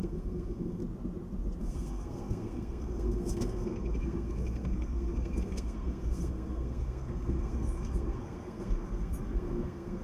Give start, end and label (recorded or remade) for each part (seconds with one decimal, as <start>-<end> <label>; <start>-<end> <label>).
0.0-0.8 remade; 0.8-1.6 recorded; 1.6-10.0 remade